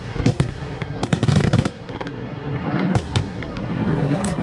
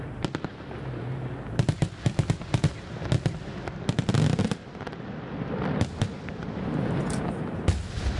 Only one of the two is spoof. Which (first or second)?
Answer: first